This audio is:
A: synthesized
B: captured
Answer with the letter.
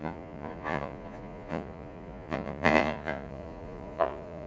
A